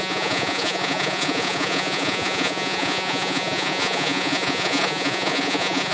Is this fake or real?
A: fake